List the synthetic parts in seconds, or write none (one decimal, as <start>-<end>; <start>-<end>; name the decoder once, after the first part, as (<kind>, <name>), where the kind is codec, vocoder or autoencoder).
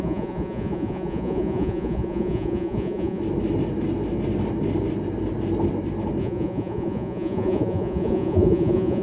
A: 0.0-3.2 (vocoder, Vocos); 6.2-9.0